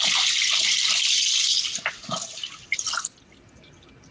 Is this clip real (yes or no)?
yes